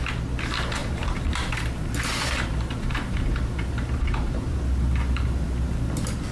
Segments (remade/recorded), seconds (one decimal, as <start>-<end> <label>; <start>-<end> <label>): 0.0-0.8 recorded; 0.8-4.6 remade; 4.6-6.3 recorded